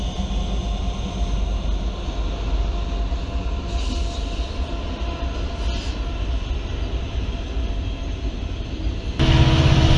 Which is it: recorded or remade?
recorded